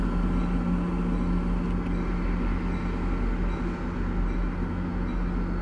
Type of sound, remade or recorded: recorded